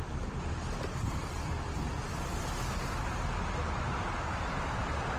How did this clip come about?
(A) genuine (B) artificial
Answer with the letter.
A